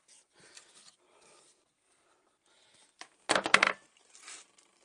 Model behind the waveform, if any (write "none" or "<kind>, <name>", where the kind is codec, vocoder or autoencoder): none